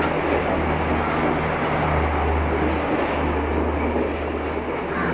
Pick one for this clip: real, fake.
real